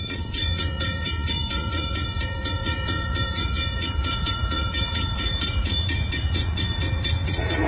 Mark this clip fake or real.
fake